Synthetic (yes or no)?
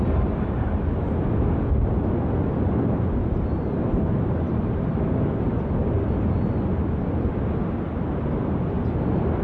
no